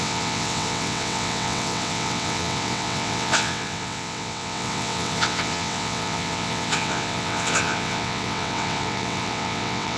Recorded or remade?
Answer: remade